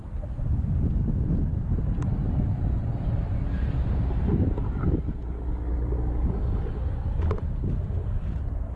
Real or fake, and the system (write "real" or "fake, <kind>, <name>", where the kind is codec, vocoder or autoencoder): real